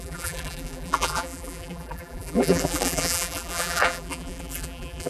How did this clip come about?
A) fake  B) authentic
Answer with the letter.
A